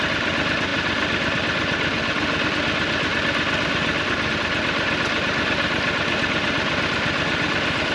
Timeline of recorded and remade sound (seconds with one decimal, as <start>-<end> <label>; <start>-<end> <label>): 0.0-7.9 recorded